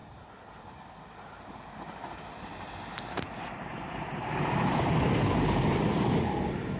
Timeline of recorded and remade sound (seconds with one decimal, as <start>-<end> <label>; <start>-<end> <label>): 0.0-6.8 recorded